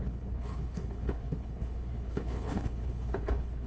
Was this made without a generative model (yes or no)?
no